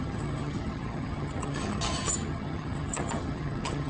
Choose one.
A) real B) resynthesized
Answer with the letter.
B